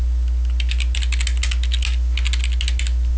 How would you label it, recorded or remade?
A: recorded